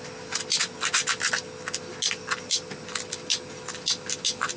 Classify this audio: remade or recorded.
recorded